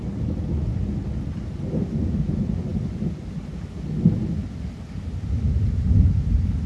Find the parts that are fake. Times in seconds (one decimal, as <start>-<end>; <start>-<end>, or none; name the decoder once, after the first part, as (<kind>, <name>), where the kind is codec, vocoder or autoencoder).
none